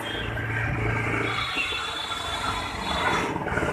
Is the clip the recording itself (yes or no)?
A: no